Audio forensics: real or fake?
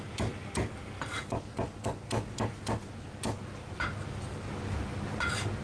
real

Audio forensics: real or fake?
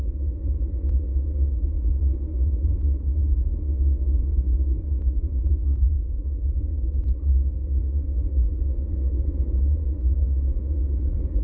fake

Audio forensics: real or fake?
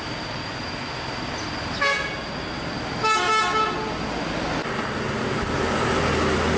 real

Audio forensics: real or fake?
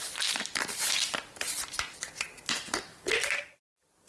real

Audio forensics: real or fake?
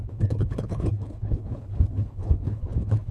fake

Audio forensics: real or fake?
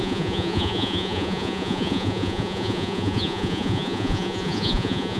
fake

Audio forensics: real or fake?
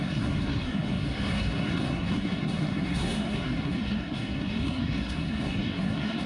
fake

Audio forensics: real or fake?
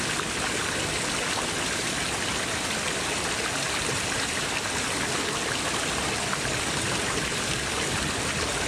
real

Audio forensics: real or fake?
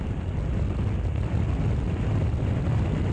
fake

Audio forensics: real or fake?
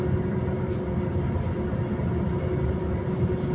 real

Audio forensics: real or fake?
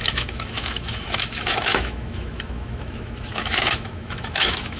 fake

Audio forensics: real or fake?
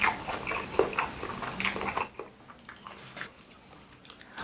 real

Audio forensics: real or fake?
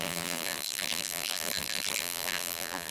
fake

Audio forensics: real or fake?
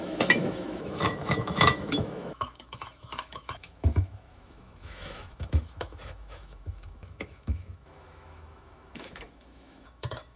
fake